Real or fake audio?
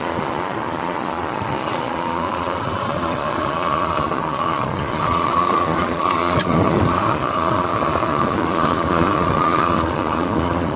fake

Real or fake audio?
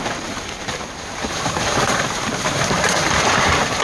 fake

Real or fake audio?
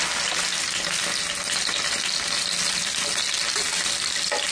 real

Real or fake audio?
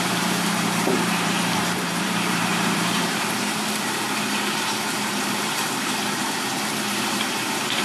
fake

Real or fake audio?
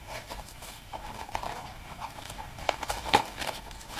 fake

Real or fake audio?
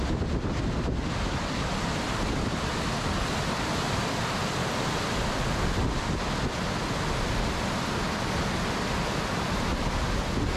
real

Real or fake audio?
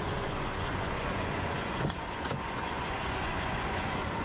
fake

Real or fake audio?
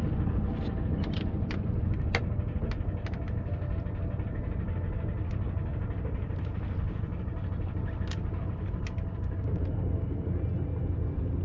real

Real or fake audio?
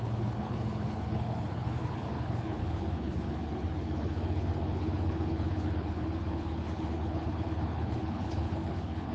fake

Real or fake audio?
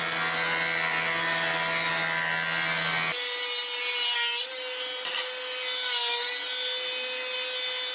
real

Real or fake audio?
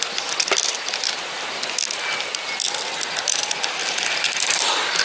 real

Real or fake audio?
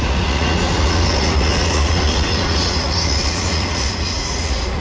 fake